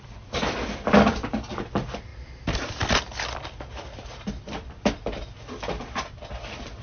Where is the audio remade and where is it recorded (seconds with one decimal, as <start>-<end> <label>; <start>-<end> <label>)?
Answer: 0.0-2.1 remade; 2.1-3.4 recorded; 3.4-6.8 remade